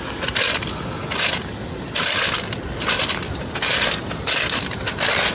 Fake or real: real